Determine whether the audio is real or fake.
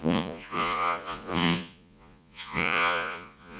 fake